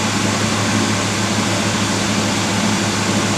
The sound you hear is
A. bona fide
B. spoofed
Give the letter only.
A